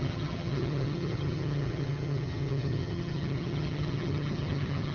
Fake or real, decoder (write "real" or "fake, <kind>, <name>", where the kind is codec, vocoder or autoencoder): fake, vocoder, HiFi-GAN